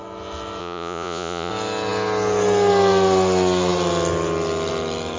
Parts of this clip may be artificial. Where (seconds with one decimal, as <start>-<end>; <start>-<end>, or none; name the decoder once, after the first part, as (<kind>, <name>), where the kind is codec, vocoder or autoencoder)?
0.6-1.5 (vocoder, Vocos)